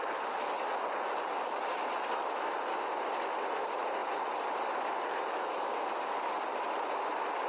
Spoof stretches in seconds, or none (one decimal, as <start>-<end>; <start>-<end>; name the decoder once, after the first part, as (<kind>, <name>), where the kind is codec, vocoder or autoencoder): none